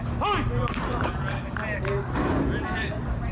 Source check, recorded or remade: recorded